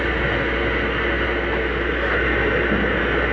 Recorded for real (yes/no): yes